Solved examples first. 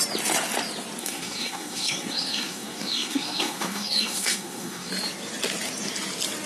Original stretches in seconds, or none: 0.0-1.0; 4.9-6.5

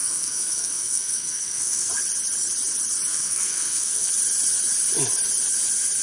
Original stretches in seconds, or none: 1.9-3.1; 4.1-6.0

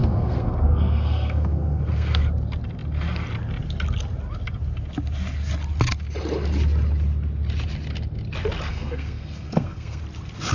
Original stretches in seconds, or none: 2.2-8.7; 10.0-10.5